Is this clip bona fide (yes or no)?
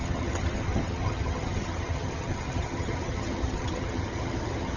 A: no